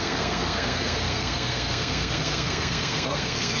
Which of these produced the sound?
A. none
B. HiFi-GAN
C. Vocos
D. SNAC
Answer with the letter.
D